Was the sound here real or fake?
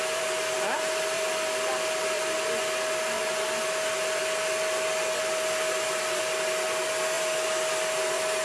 real